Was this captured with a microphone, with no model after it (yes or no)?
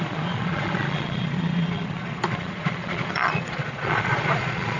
no